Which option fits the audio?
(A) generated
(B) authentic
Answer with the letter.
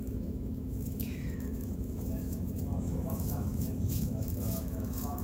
A